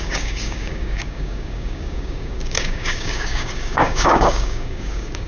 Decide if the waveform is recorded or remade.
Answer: remade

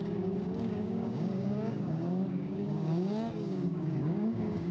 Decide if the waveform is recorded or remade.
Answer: remade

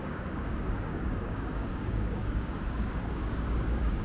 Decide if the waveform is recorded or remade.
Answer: remade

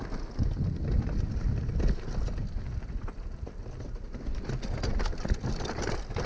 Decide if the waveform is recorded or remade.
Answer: recorded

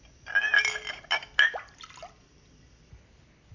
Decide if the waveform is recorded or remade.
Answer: recorded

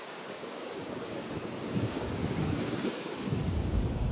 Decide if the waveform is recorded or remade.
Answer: remade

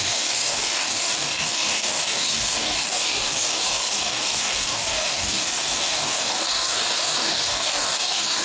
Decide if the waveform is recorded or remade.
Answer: remade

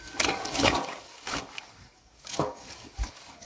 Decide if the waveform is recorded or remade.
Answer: remade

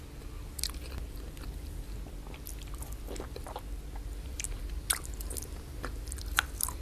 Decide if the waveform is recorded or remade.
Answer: recorded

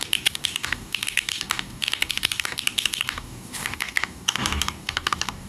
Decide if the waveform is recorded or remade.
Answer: remade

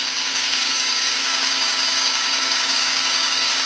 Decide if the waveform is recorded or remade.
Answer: remade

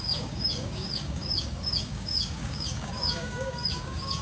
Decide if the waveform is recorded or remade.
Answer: remade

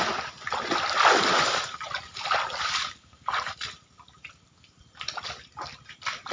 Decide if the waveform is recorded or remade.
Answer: recorded